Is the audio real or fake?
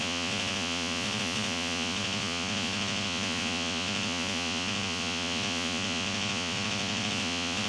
fake